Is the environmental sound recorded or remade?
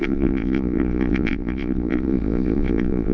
remade